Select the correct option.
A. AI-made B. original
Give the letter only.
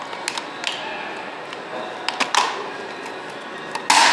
B